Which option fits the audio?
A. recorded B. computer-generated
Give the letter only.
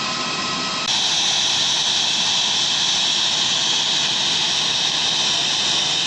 A